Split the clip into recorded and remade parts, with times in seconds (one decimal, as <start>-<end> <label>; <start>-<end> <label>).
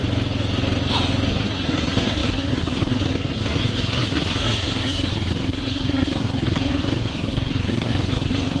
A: 0.0-1.3 recorded; 1.3-8.6 remade